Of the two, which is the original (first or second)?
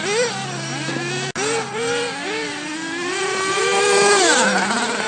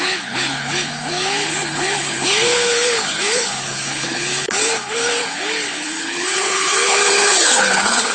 first